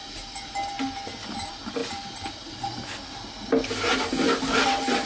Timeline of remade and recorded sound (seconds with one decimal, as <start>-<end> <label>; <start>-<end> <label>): 0.0-5.1 recorded